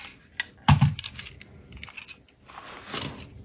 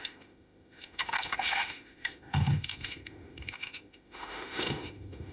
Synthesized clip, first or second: second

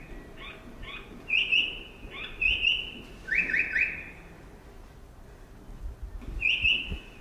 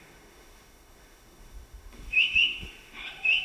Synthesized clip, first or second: second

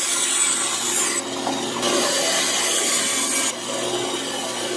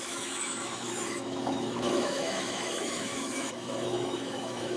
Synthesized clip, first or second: second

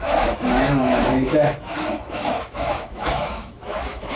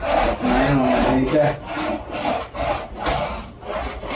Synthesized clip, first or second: first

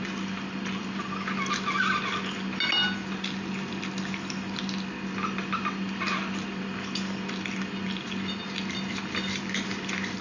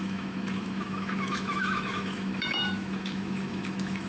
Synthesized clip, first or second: second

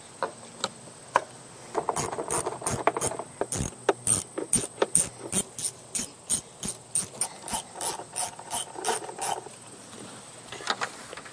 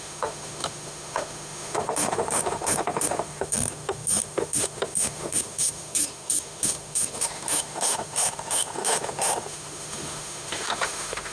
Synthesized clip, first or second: second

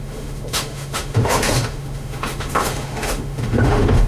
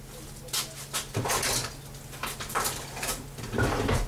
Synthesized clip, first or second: first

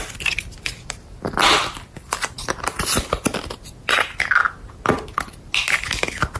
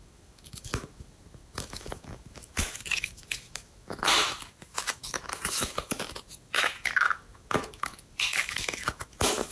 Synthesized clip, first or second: second